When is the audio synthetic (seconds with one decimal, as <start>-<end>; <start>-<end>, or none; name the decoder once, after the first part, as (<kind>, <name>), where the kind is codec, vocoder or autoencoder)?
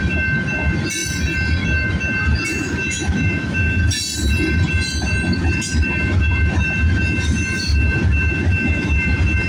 2.5-3.8 (autoencoder, DAC-VAE); 8.5-9.1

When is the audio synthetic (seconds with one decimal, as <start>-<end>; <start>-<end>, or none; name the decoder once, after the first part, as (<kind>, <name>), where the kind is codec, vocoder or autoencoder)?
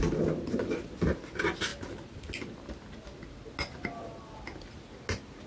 none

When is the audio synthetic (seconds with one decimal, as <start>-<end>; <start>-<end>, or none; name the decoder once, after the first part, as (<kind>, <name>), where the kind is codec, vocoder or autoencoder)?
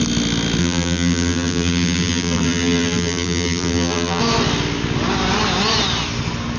0.6-4.2 (vocoder, BigVGAN v2)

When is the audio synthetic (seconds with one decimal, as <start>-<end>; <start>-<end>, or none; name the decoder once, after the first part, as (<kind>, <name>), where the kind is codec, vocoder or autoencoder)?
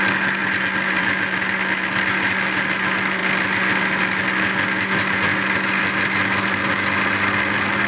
none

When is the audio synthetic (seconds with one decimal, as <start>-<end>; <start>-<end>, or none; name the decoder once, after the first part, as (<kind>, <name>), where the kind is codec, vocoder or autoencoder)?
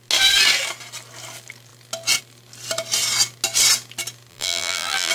4.3-5.1 (vocoder, BigVGAN v2)